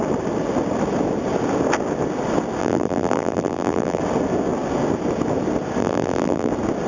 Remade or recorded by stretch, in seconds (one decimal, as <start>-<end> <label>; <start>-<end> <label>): 0.0-2.6 recorded; 2.6-4.0 remade; 4.0-5.8 recorded; 5.8-6.5 remade; 6.5-6.9 recorded